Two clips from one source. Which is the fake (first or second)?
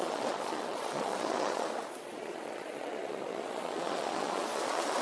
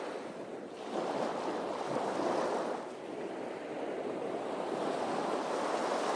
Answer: first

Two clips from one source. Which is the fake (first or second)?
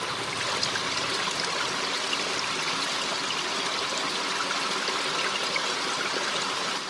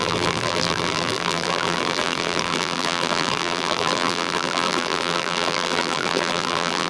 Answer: second